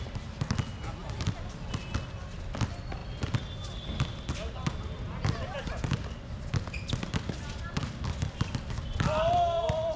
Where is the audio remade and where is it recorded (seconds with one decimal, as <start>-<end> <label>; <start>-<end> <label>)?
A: 0.0-10.0 recorded